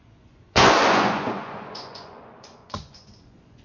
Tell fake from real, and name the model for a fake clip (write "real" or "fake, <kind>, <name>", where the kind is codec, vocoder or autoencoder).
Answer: fake, vocoder, Vocos